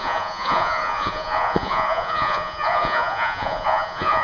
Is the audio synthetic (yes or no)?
yes